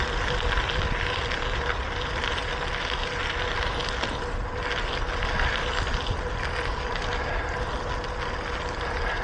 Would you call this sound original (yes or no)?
yes